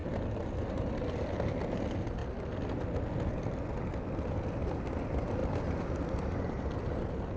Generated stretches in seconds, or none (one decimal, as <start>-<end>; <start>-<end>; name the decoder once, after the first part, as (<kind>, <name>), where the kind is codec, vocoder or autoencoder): none